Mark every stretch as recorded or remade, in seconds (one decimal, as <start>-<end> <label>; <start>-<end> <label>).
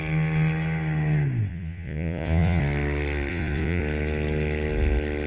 0.0-1.5 recorded; 1.5-2.6 remade; 2.6-3.3 recorded; 3.3-3.8 remade; 3.8-5.3 recorded